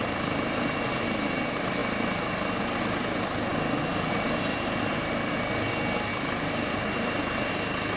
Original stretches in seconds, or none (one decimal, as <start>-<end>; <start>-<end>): 0.0-6.1; 7.5-8.0